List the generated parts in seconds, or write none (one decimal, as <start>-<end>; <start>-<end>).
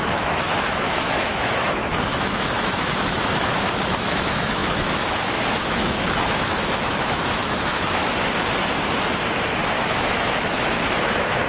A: 0.0-8.0; 9.8-11.5